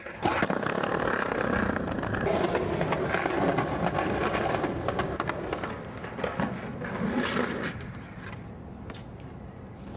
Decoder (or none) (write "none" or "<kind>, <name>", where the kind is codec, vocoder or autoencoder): none